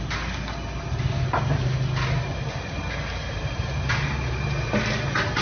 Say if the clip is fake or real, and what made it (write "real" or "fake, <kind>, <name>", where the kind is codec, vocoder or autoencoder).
real